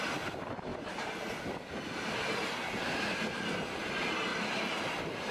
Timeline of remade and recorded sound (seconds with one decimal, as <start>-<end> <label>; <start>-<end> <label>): 0.0-5.3 recorded